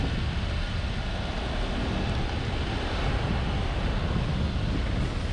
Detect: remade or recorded recorded